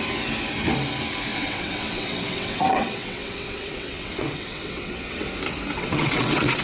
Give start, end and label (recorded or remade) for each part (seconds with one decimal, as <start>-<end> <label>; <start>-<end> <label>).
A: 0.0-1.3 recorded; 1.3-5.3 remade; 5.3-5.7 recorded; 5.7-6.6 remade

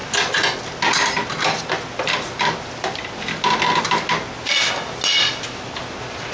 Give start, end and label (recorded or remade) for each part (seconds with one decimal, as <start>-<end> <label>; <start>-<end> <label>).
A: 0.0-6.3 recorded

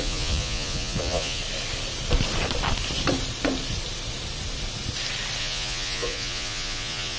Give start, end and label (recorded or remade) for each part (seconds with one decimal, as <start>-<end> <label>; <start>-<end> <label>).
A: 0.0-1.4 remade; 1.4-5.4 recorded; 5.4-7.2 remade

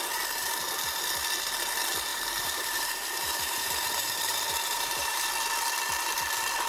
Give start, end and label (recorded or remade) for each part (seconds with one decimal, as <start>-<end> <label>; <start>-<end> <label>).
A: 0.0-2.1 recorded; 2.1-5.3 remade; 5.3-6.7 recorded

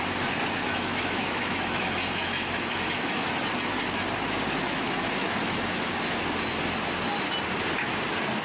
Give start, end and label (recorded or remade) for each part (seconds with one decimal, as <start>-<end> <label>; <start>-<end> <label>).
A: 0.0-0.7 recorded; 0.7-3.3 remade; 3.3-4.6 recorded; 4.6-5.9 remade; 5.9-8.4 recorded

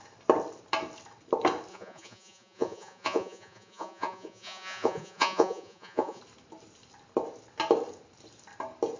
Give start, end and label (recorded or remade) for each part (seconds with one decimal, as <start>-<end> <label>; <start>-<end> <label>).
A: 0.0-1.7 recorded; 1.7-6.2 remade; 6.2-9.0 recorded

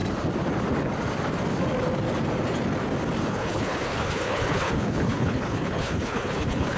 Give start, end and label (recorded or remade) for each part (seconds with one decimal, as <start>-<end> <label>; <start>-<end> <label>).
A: 0.0-3.3 recorded; 3.3-6.8 remade